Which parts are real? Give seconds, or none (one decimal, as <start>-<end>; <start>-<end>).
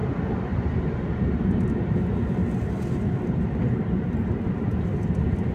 0.0-5.5